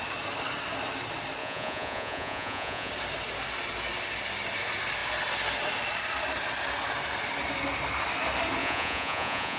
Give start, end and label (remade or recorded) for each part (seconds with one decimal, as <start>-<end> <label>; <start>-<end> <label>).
0.0-1.4 recorded; 1.4-2.9 remade; 2.9-8.6 recorded; 8.6-9.6 remade